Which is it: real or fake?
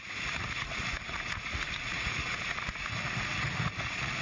fake